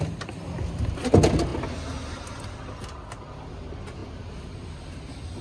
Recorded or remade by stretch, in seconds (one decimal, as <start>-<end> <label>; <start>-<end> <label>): 0.0-5.4 recorded